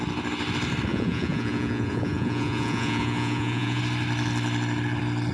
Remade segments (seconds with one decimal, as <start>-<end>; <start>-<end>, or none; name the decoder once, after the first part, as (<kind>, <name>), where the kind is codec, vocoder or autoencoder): 0.9-3.8 (vocoder, Vocos)